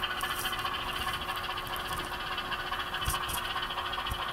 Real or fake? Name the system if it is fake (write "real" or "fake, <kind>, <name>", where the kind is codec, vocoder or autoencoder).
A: real